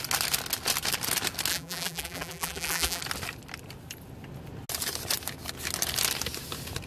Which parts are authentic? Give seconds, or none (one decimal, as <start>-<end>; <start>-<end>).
0.0-1.5; 3.0-6.9